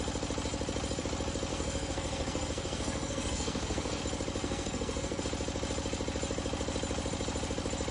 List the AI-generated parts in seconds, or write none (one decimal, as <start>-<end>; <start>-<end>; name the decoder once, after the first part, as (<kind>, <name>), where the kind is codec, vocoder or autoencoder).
1.5-4.0 (codec, SNAC); 4.4-5.2